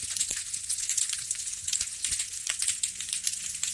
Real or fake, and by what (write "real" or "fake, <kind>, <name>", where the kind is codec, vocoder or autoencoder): fake, vocoder, Vocos